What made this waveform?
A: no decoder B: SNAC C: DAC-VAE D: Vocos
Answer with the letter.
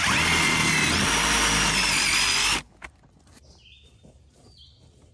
A